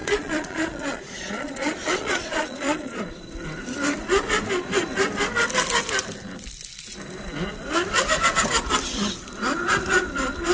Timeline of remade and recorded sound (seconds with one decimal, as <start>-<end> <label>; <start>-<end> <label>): 0.0-3.0 remade; 3.0-10.5 recorded